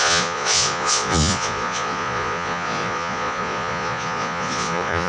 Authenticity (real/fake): fake